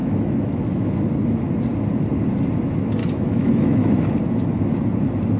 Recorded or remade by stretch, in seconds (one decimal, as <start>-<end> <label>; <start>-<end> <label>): 0.0-1.0 remade; 1.0-3.0 recorded; 3.0-4.2 remade; 4.2-5.4 recorded